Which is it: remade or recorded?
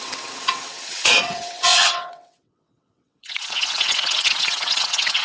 remade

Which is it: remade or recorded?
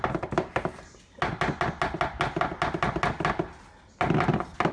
recorded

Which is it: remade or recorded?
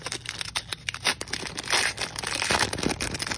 recorded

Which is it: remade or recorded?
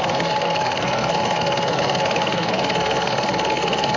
remade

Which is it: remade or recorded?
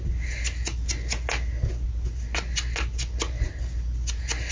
recorded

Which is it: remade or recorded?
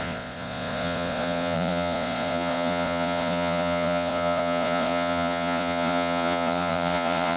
remade